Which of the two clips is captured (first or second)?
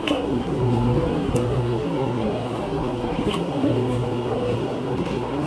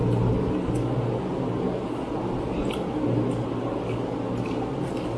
second